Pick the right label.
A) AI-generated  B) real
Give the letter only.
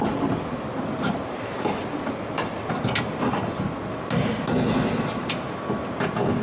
B